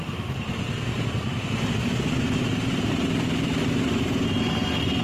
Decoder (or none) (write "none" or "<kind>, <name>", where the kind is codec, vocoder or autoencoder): none